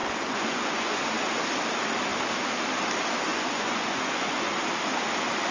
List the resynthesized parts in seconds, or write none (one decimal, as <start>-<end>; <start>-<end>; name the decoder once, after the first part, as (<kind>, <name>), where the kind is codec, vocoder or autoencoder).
0.0-1.0 (vocoder, Vocos); 3.3-4.5